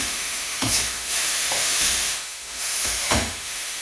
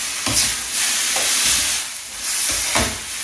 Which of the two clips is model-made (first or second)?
first